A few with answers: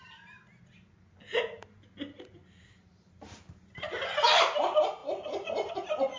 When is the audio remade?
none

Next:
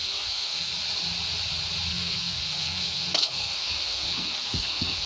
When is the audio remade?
0.0-0.7; 1.9-5.1